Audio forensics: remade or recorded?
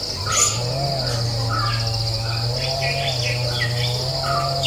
recorded